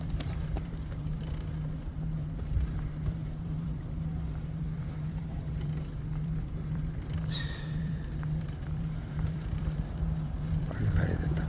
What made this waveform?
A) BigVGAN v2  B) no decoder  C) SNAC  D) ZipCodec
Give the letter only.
A